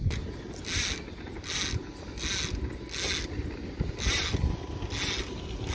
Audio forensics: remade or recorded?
recorded